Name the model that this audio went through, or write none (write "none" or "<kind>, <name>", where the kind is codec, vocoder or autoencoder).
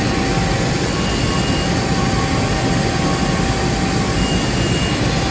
none